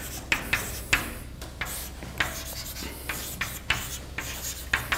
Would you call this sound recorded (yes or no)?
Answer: yes